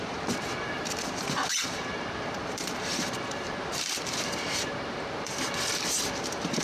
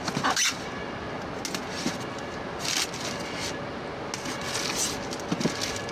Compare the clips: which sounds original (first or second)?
second